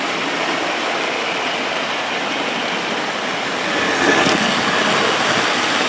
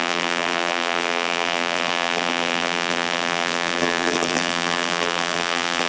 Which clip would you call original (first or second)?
first